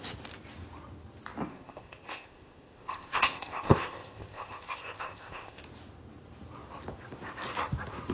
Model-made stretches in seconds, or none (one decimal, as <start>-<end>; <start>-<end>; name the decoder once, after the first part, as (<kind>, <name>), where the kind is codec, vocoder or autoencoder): 1.5-5.6 (codec, ZipCodec)